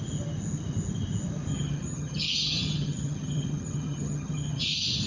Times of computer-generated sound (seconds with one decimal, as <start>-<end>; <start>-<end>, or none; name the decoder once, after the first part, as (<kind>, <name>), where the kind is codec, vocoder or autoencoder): 1.5-4.6 (vocoder, HiFi-GAN)